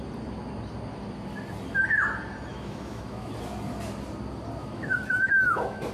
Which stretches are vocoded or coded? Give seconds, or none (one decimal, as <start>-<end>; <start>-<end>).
2.5-3.3; 4.6-5.9